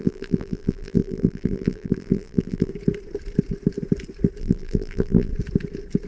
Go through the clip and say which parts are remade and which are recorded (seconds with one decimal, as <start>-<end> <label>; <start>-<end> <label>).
0.0-2.7 remade; 2.7-4.4 recorded; 4.4-5.3 remade; 5.3-6.1 recorded